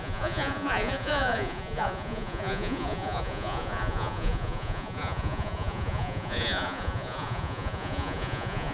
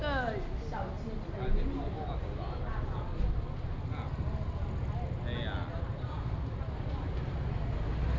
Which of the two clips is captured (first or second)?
second